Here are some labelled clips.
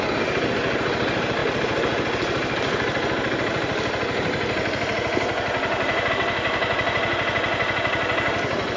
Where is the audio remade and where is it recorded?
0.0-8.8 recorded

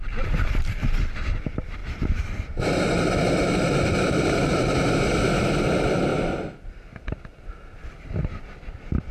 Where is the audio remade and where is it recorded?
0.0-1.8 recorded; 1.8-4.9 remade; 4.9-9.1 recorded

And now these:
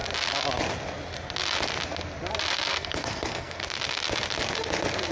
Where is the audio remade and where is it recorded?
0.0-2.7 recorded; 2.7-3.6 remade; 3.6-5.1 recorded

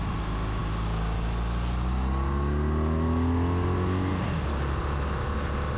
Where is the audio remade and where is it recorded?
0.0-5.8 recorded

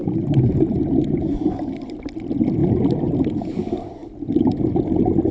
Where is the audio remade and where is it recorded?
0.0-5.3 recorded

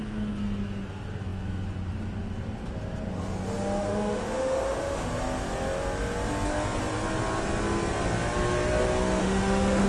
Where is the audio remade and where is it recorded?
0.0-3.8 recorded; 3.8-5.1 remade; 5.1-9.2 recorded; 9.2-9.9 remade

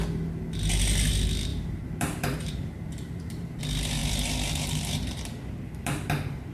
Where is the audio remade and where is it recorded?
0.0-1.5 recorded; 1.5-3.6 remade; 3.6-6.5 recorded

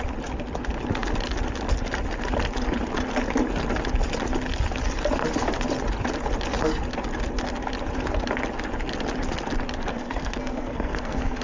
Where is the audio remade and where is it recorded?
0.0-9.9 recorded; 9.9-11.4 remade